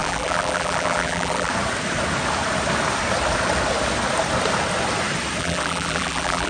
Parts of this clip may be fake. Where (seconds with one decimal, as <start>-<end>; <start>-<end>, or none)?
0.0-1.5; 5.4-6.5